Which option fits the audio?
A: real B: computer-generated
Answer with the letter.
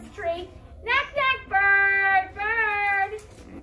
A